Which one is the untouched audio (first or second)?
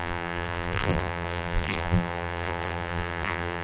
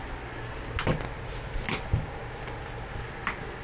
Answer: second